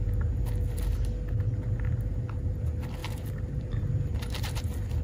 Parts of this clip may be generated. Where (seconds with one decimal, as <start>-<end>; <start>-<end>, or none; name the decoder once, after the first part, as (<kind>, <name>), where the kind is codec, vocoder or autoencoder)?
3.0-4.6 (vocoder, BigVGAN v2)